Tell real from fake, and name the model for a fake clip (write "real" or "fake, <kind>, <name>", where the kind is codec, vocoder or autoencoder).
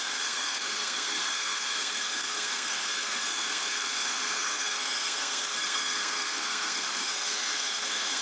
fake, codec, SNAC